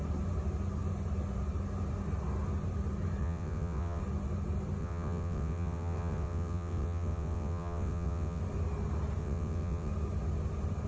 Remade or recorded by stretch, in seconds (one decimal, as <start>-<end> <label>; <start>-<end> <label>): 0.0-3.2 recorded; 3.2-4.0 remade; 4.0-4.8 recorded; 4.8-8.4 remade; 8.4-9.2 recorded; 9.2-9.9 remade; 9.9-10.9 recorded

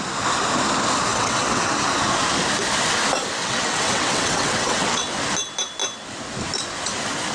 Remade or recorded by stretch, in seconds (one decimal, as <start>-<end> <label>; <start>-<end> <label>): 0.0-1.1 recorded; 1.1-1.7 remade; 1.7-3.4 recorded; 3.4-5.1 remade; 5.1-7.3 recorded

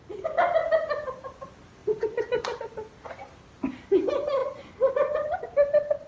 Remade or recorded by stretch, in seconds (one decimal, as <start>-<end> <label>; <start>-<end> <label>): 0.0-6.1 recorded